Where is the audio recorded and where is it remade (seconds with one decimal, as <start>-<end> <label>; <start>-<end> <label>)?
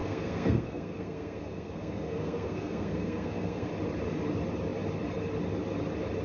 0.0-3.7 remade; 3.7-6.2 recorded